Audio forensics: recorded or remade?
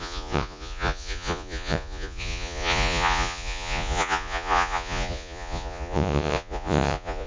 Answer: remade